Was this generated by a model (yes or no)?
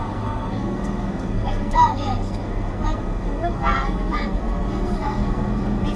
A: yes